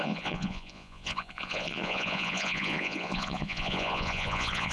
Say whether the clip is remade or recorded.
remade